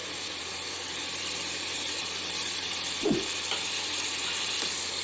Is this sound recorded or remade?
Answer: remade